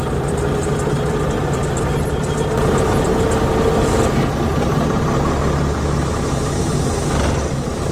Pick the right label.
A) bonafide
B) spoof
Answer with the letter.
A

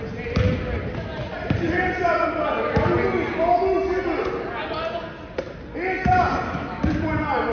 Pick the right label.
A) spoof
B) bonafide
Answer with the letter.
B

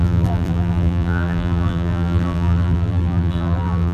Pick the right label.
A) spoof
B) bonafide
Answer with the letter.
A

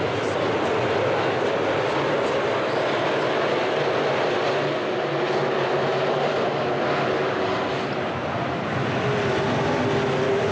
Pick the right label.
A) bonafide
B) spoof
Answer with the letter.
A